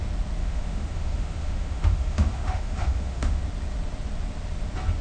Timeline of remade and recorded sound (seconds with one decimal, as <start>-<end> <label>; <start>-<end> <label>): 0.0-0.4 recorded; 0.4-3.4 remade; 3.4-5.0 recorded